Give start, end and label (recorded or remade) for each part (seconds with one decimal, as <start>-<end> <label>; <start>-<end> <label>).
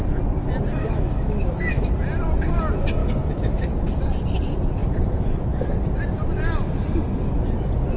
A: 0.0-0.8 recorded; 0.8-1.9 remade; 1.9-3.0 recorded; 3.0-3.6 remade; 3.6-4.8 recorded; 4.8-5.7 remade; 5.7-8.0 recorded